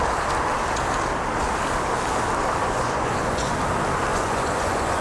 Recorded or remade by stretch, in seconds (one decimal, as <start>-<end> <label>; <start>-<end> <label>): 0.0-2.6 recorded; 2.6-3.5 remade; 3.5-4.1 recorded; 4.1-5.0 remade